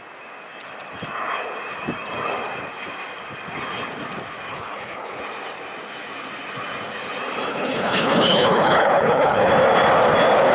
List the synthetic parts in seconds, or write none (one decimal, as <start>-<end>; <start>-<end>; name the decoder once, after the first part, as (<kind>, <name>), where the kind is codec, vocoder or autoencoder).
4.5-5.2 (codec, HILCodec); 7.5-9.5